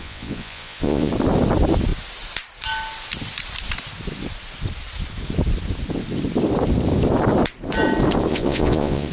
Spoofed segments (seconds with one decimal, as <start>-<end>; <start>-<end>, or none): 0.0-1.1; 8.3-9.1